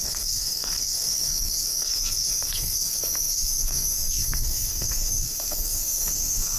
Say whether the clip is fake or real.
fake